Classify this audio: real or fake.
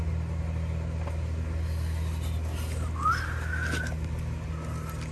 real